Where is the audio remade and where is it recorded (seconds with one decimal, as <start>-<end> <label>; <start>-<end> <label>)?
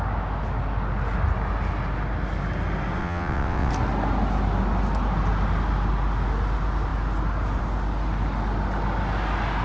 0.0-3.0 recorded; 3.0-3.7 remade; 3.7-9.6 recorded